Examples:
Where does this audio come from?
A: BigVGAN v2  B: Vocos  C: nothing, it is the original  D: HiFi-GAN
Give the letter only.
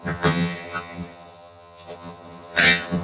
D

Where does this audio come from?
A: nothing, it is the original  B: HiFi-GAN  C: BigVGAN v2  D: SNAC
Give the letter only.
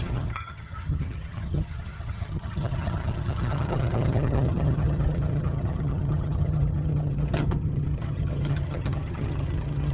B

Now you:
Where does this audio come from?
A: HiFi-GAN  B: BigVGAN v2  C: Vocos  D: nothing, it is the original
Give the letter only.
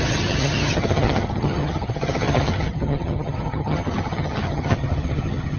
A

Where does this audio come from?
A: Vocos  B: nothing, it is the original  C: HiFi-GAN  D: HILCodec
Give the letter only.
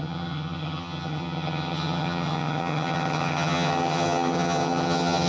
C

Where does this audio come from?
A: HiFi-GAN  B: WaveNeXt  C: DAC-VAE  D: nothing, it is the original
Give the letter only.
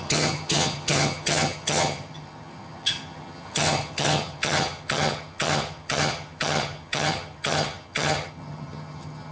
A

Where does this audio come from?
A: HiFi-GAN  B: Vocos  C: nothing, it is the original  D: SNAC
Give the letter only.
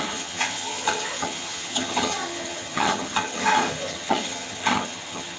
A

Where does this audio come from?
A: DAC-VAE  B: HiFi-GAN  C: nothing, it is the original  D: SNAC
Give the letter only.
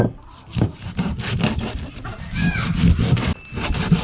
C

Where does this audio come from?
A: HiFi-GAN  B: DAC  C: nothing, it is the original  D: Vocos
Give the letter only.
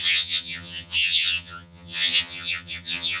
A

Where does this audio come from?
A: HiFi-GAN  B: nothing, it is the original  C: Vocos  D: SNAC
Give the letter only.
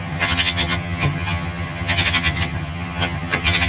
A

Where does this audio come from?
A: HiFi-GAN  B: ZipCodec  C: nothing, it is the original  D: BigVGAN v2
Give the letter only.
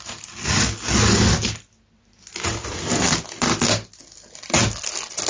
C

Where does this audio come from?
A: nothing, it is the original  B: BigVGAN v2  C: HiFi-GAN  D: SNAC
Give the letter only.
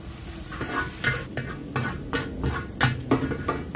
A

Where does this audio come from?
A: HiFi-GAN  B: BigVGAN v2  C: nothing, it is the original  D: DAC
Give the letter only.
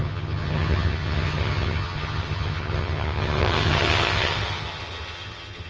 A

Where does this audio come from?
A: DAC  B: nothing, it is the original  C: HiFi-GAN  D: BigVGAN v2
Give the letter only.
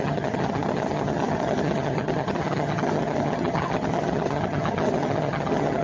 C